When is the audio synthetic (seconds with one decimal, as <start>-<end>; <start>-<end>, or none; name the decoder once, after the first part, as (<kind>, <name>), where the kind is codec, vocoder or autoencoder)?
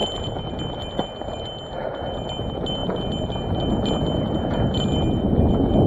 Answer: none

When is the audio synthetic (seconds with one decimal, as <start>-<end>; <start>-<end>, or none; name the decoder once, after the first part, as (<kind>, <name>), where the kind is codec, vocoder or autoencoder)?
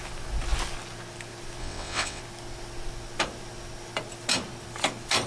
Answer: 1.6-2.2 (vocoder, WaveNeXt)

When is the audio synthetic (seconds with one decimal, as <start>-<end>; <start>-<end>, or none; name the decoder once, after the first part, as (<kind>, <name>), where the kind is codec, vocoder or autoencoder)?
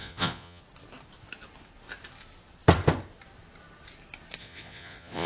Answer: 0.0-0.6 (vocoder, Vocos); 4.4-5.3